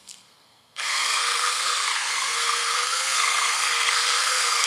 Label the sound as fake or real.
fake